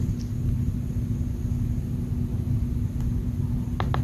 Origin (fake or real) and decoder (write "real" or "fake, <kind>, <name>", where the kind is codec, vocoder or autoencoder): real